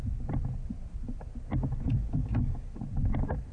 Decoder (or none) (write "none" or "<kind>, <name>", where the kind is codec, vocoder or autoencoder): none